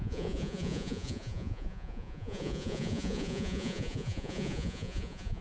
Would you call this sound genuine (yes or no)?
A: no